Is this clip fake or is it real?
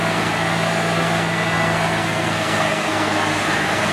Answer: fake